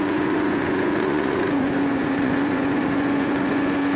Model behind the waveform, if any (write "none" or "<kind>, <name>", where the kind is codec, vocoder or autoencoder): vocoder, Vocos